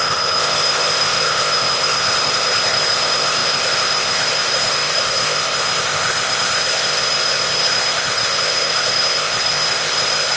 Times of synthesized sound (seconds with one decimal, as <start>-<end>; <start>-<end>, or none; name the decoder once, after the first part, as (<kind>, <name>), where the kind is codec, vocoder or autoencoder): 0.0-10.4 (codec, ZipCodec)